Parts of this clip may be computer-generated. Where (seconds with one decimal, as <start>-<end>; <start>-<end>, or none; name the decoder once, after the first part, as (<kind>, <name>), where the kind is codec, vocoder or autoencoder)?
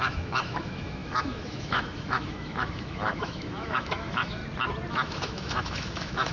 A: 0.0-4.4 (autoencoder, DAC-VAE); 4.9-6.3